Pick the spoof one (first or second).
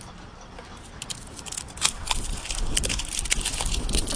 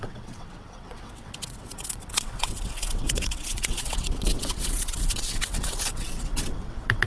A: second